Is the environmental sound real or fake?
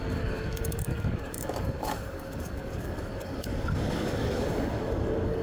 fake